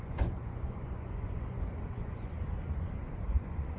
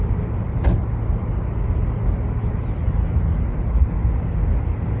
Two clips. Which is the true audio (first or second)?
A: second